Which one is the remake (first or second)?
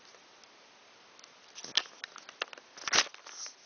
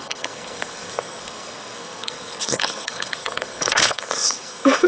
second